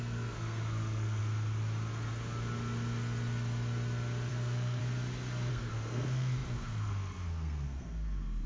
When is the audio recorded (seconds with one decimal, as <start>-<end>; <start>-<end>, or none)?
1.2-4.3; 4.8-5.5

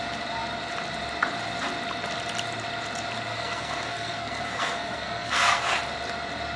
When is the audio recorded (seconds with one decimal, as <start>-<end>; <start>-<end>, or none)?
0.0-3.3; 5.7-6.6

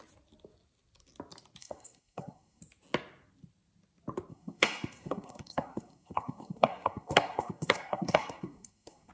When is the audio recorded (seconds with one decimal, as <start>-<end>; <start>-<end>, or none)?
0.0-1.6; 2.6-4.3

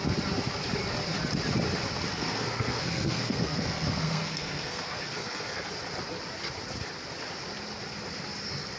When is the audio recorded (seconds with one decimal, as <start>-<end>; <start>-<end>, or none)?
0.0-2.1; 5.7-8.8